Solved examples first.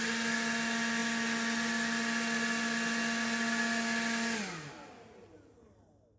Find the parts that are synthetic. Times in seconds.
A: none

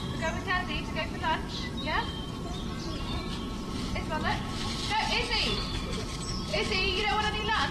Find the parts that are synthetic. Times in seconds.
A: 0.6-3.9 (vocoder, BigVGAN v2); 6.5-7.7